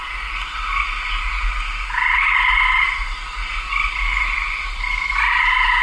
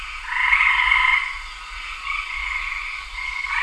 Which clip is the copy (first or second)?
second